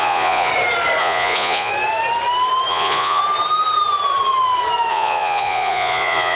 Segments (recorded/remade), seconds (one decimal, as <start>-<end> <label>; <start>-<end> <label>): 0.0-0.5 remade; 0.5-1.0 recorded; 1.0-1.7 remade; 1.7-2.7 recorded; 2.7-3.2 remade; 3.2-4.9 recorded; 4.9-6.4 remade